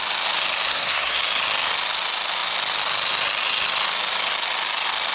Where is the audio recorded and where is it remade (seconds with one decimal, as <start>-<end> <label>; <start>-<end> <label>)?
0.0-0.7 recorded; 0.7-1.2 remade; 1.2-5.1 recorded